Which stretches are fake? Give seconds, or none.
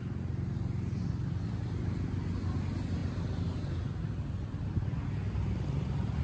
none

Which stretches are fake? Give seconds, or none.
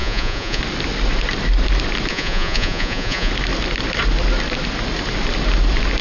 0.0-0.6; 2.1-3.3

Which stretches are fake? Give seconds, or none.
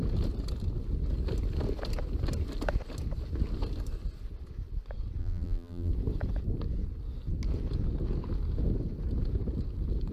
5.2-5.9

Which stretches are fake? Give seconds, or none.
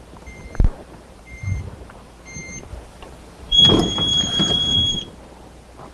0.4-2.2; 2.7-5.0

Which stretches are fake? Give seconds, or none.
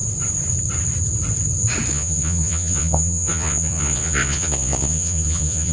1.9-5.7